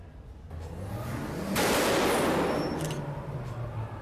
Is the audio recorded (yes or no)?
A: yes